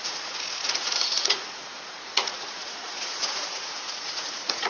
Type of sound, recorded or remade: remade